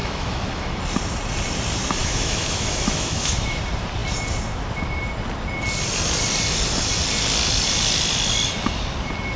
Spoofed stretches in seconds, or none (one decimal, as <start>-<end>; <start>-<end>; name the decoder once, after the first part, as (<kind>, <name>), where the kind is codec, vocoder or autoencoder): 0.0-0.8 (autoencoder, DAC-VAE); 2.0-3.6